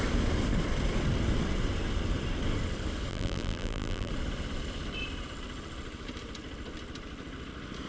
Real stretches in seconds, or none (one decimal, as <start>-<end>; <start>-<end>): 0.0-3.1; 4.1-7.9